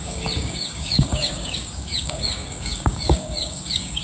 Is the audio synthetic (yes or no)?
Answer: yes